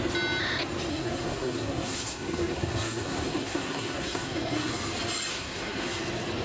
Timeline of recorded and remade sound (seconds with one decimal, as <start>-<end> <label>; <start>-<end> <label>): 0.0-0.9 recorded; 0.9-4.7 remade; 4.7-5.3 recorded; 5.3-6.0 remade; 6.0-6.4 recorded